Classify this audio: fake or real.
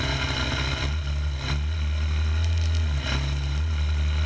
real